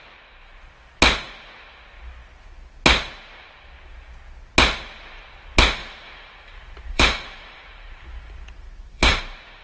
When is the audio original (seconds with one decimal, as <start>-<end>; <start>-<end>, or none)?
0.0-5.8; 9.2-9.6